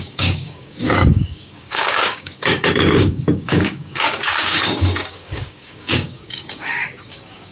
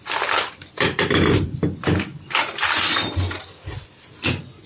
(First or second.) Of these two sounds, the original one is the second